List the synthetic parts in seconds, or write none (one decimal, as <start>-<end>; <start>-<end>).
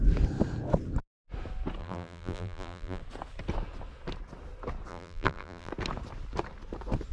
1.8-3.0; 4.9-5.7